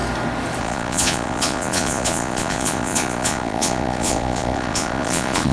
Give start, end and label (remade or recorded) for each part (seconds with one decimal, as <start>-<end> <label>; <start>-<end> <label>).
0.0-0.6 recorded; 0.6-5.5 remade